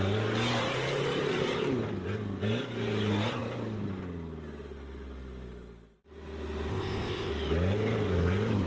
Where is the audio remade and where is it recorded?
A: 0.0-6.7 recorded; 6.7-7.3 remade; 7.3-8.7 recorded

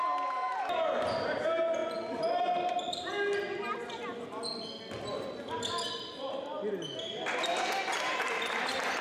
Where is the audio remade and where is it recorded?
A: 0.0-9.0 recorded

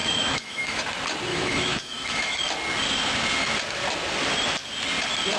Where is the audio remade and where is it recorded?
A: 0.0-0.8 remade; 0.8-1.3 recorded; 1.3-2.4 remade; 2.4-5.4 recorded

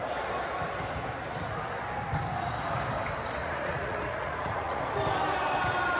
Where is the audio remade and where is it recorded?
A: 0.0-3.4 recorded; 3.4-4.8 remade; 4.8-6.0 recorded

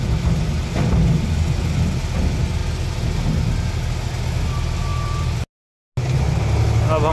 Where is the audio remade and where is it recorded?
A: 0.0-7.1 recorded

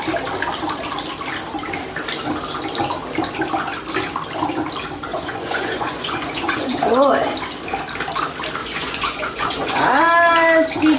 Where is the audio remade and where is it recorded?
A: 0.0-5.1 recorded; 5.1-7.1 remade; 7.1-8.6 recorded; 8.6-10.0 remade; 10.0-11.0 recorded

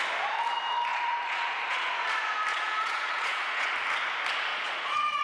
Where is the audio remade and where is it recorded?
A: 0.0-0.9 recorded; 0.9-1.9 remade; 1.9-2.5 recorded; 2.5-3.7 remade; 3.7-4.5 recorded; 4.5-5.2 remade

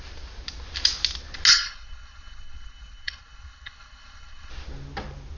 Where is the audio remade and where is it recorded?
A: 0.0-1.5 recorded; 1.5-4.5 remade; 4.5-5.4 recorded